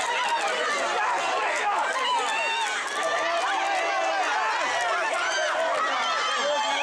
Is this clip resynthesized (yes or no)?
no